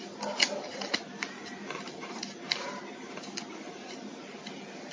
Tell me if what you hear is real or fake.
real